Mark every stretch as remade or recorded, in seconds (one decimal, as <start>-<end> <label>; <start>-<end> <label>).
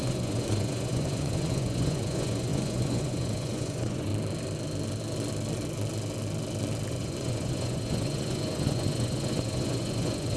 0.0-4.1 remade; 4.1-6.9 recorded; 6.9-10.4 remade